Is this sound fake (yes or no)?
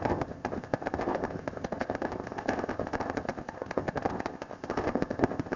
yes